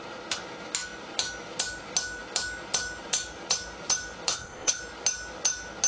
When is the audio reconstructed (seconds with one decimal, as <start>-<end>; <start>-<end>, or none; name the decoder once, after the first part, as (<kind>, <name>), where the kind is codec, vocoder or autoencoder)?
4.3-4.8 (codec, ZipCodec)